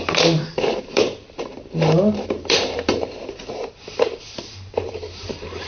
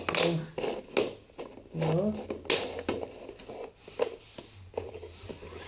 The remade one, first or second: first